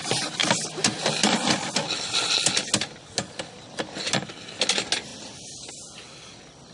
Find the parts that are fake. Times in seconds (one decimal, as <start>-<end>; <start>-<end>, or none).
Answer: none